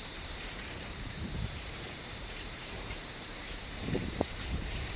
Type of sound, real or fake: fake